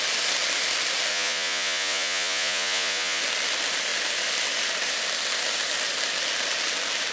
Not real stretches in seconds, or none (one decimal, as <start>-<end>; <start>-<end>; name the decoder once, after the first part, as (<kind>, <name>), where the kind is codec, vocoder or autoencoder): 1.1-3.2 (vocoder, Vocos)